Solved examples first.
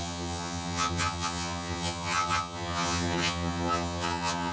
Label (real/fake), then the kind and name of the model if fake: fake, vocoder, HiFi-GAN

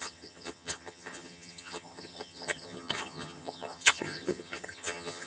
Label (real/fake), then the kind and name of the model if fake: fake, vocoder, HiFi-GAN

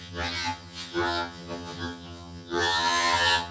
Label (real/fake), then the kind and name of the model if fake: fake, vocoder, HiFi-GAN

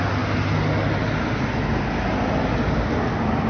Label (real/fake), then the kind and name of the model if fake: real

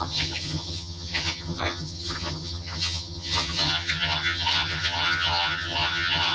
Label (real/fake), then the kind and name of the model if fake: fake, vocoder, HiFi-GAN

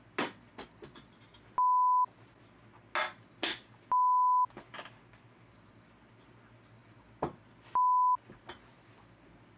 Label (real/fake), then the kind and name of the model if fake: real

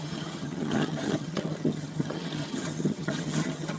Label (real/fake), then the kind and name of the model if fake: fake, vocoder, HiFi-GAN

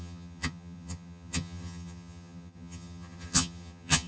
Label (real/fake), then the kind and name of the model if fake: fake, vocoder, HiFi-GAN